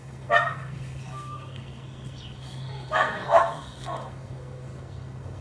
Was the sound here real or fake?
fake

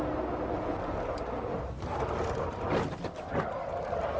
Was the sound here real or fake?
real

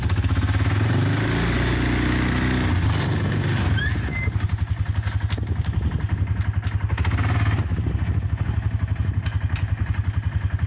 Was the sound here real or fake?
real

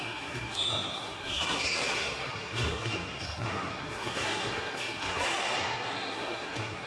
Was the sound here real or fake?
fake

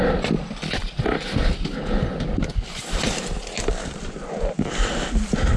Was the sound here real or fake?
real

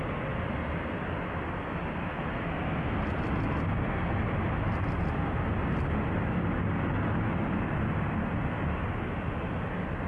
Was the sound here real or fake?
real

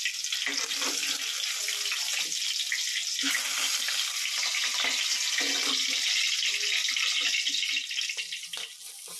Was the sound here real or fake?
real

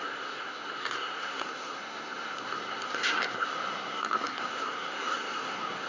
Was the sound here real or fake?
fake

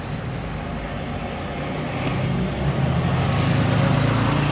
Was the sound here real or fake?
real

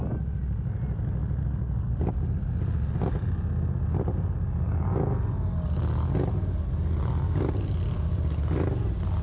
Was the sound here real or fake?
real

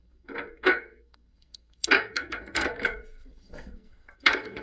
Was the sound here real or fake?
fake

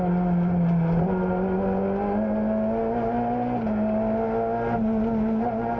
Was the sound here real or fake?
real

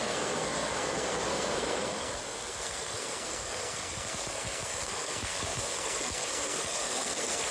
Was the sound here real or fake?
fake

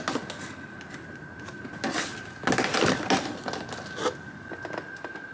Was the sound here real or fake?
real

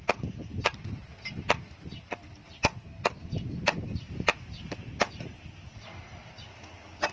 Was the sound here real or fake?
real